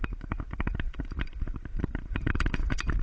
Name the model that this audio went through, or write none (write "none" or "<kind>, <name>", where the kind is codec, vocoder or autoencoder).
vocoder, BigVGAN v2